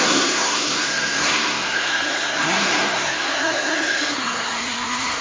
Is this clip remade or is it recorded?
remade